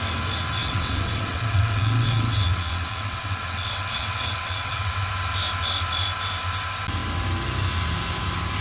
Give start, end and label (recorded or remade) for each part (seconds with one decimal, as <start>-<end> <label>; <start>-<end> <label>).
0.0-0.6 recorded; 0.6-5.1 remade; 5.1-8.6 recorded